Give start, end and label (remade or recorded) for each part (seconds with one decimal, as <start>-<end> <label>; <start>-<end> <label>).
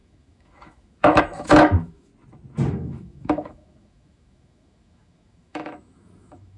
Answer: 0.0-2.1 remade; 2.1-2.7 recorded; 2.7-6.6 remade